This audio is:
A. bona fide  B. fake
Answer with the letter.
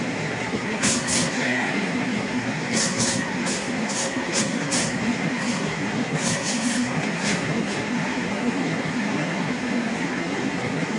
B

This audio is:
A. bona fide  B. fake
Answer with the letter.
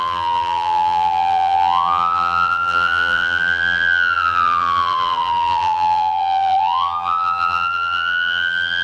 B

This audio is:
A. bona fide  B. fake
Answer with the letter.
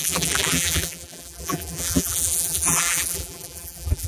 B